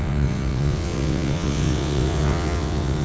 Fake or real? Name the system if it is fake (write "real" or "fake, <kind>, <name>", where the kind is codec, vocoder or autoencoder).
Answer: fake, vocoder, WaveNeXt